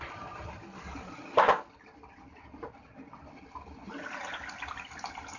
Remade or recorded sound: recorded